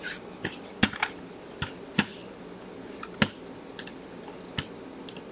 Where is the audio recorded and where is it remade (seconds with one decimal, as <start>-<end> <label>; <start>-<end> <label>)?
0.0-5.3 recorded